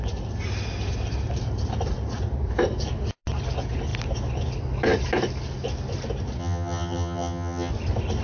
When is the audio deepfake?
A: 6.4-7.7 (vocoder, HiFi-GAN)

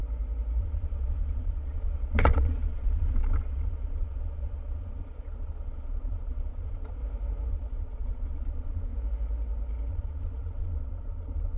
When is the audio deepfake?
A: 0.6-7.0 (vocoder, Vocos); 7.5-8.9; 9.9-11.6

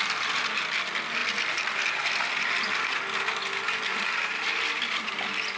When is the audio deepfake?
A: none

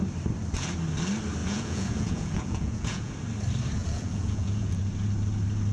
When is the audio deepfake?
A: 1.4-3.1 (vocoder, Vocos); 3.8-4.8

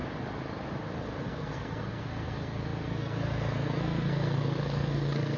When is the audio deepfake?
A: 1.2-5.4 (codec, SNAC)

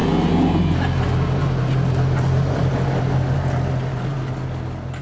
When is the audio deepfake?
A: none